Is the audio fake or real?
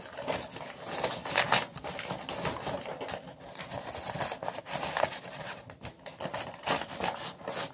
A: real